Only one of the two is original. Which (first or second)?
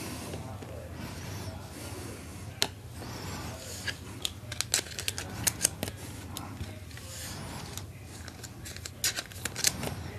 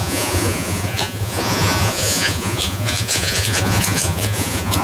first